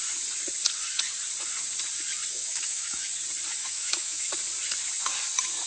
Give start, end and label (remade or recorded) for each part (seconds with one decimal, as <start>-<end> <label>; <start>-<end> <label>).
0.0-2.3 recorded; 2.3-3.1 remade; 3.1-3.6 recorded; 3.6-4.3 remade; 4.3-5.7 recorded